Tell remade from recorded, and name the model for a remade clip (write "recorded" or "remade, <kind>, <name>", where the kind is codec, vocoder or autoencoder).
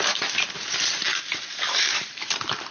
remade, vocoder, BigVGAN v2